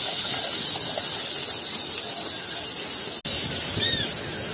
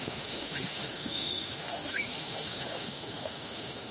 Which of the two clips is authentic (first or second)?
first